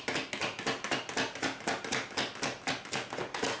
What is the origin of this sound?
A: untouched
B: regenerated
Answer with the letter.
A